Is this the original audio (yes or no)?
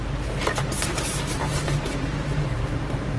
no